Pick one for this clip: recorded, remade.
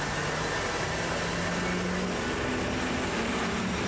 recorded